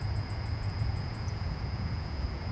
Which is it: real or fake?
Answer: fake